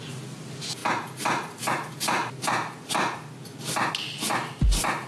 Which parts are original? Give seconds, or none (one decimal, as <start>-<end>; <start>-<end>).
0.0-5.1